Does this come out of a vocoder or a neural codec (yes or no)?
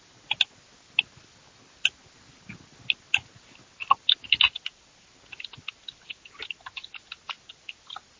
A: no